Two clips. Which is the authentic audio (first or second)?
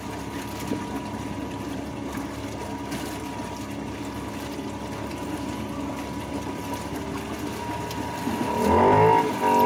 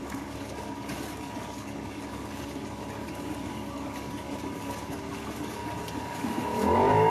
first